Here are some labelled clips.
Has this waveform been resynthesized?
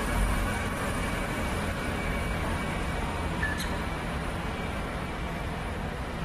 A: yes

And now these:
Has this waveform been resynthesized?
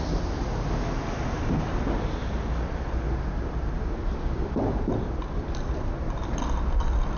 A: no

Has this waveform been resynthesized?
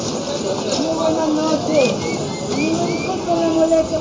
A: no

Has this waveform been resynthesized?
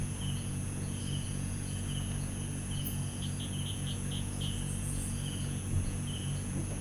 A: yes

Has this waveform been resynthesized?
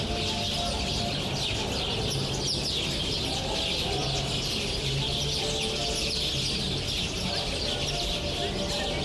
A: no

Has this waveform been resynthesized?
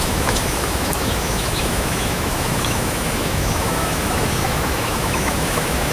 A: yes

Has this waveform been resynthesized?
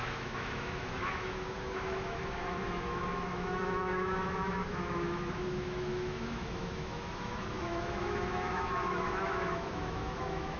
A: yes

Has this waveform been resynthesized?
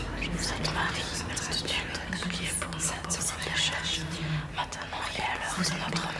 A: no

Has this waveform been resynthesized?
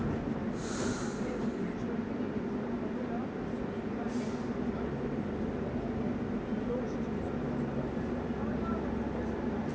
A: no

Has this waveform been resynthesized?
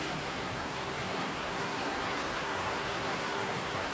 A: yes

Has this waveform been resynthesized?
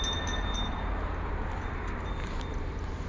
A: no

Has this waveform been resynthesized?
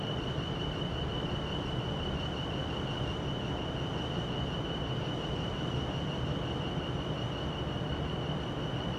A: no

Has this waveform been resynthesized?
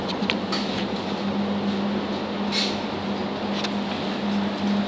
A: no